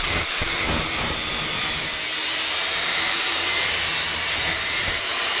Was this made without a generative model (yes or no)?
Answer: no